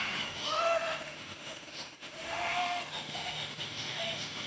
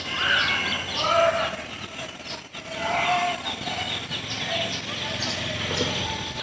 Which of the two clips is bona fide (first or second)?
second